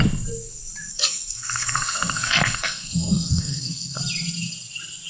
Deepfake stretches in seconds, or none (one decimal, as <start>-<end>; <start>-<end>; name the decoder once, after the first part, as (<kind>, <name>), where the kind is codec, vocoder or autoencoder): 0.9-4.0 (codec, SNAC)